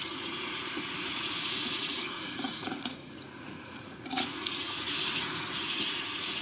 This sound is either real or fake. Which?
fake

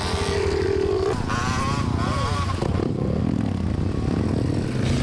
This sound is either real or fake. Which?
real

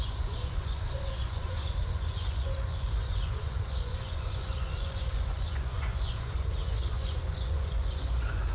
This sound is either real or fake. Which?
fake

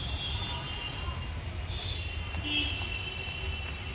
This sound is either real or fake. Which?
real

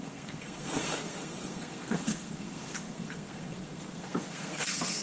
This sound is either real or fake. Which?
fake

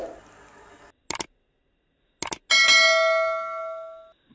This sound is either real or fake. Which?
real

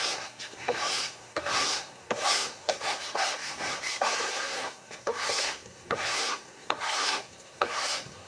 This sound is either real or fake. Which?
fake